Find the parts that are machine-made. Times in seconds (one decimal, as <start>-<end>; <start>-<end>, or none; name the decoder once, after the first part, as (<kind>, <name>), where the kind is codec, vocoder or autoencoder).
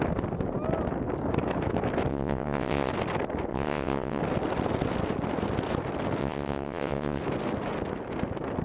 2.1-2.9 (vocoder, WaveNeXt); 3.5-4.2; 6.2-7.2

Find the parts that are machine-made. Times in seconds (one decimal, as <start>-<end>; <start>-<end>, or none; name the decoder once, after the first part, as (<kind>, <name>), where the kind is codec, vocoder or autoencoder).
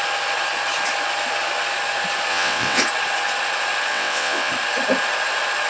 2.3-2.8 (vocoder, WaveNeXt); 3.9-4.5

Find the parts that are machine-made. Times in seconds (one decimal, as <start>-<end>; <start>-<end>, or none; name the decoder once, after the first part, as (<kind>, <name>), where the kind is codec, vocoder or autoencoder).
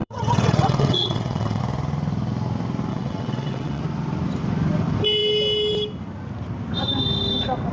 0.0-1.6 (vocoder, WaveNeXt); 2.9-3.8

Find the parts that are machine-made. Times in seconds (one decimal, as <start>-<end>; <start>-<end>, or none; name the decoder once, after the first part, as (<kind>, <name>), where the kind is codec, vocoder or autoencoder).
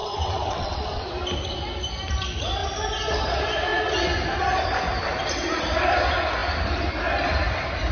0.0-1.1 (vocoder, WaveNeXt)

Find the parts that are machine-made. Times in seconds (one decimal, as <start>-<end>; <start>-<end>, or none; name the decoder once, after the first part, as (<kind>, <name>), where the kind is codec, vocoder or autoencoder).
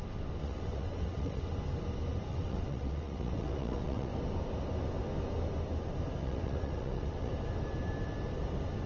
0.4-1.5 (vocoder, WaveNeXt); 2.3-4.1; 6.2-7.3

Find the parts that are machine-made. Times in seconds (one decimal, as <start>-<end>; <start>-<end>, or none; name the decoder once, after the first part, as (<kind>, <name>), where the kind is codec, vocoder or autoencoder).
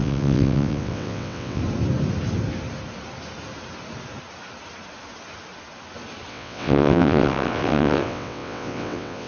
0.0-1.6 (vocoder, WaveNeXt); 6.3-9.3